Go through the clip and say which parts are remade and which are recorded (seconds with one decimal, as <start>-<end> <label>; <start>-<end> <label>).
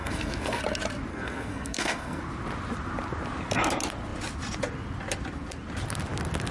0.0-0.6 remade; 0.6-1.1 recorded; 1.1-2.2 remade; 2.2-6.5 recorded